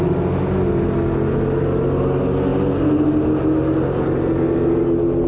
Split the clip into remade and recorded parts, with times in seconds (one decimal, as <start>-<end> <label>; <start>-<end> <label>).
0.0-5.3 recorded